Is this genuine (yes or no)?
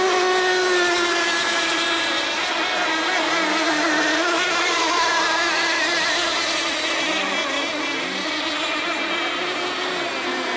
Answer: yes